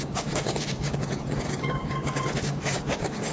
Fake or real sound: fake